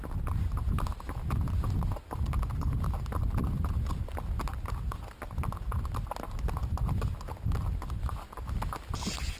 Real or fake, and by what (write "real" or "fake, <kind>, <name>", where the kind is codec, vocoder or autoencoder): real